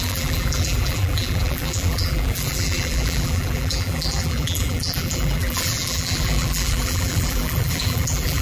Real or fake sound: fake